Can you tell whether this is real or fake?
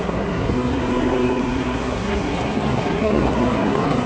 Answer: fake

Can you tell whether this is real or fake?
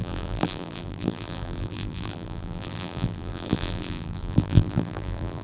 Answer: fake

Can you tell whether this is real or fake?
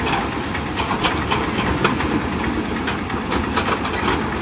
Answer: real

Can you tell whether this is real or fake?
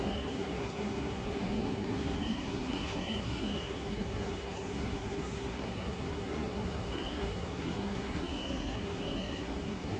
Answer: fake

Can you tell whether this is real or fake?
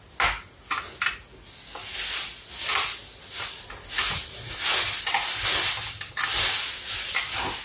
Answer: real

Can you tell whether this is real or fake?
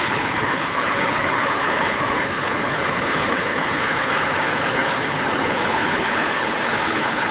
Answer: fake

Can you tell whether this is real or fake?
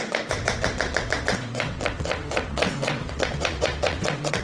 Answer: fake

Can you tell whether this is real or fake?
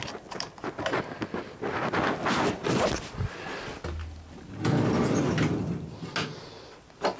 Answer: real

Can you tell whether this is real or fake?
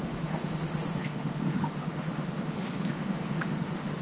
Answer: fake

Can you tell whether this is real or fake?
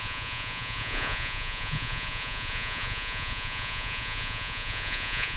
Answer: fake